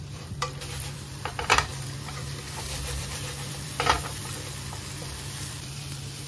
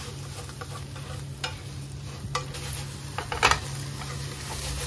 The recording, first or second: second